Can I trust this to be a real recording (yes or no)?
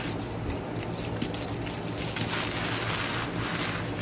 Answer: yes